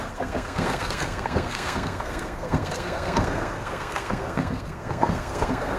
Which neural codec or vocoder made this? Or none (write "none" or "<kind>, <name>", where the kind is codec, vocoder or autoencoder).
codec, SNAC